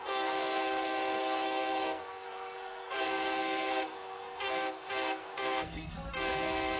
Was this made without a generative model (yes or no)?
no